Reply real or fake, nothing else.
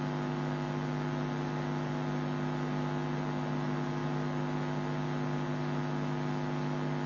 real